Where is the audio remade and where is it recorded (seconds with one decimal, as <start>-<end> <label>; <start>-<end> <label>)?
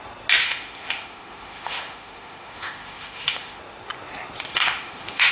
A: 0.0-0.4 recorded; 0.4-3.6 remade; 3.6-4.5 recorded; 4.5-5.3 remade